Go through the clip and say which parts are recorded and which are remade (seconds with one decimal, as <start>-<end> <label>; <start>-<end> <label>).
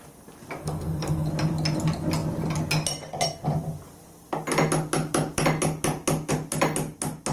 0.0-0.6 recorded; 0.6-1.3 remade; 1.3-7.3 recorded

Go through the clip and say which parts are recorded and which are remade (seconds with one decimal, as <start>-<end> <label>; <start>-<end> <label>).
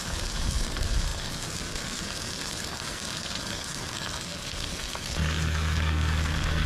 0.0-6.7 remade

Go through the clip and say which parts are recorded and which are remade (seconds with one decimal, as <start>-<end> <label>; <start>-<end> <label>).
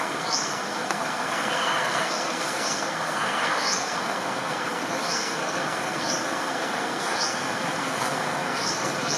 0.0-9.2 remade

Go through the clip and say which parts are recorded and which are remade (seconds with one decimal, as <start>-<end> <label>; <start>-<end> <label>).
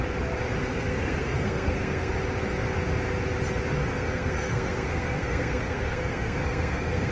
0.0-0.6 recorded; 0.6-2.1 remade; 2.1-3.8 recorded; 3.8-7.1 remade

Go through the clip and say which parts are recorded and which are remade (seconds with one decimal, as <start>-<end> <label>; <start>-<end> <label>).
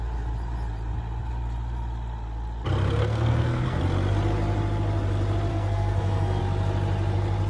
0.0-3.0 recorded; 3.0-3.8 remade; 3.8-5.5 recorded; 5.5-6.4 remade; 6.4-7.5 recorded